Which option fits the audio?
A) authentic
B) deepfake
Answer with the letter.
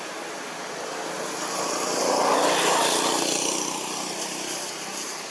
A